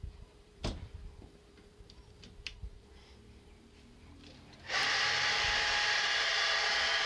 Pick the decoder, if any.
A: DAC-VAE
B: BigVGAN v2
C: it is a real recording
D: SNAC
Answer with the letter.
B